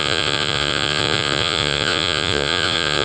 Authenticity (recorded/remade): remade